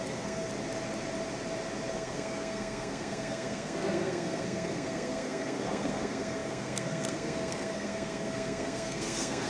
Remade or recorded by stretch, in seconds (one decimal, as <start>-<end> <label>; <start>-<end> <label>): 0.0-0.5 remade; 0.5-1.9 recorded; 1.9-9.5 remade